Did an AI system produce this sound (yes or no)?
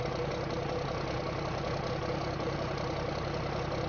no